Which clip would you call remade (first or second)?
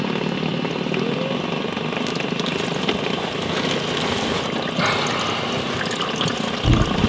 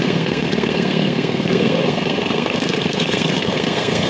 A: second